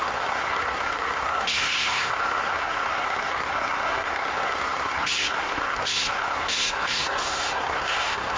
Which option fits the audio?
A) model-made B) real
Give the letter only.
A